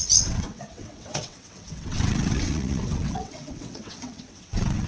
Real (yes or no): no